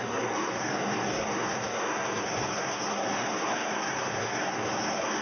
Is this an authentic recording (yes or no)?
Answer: no